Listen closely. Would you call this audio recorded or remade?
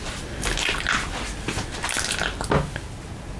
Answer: recorded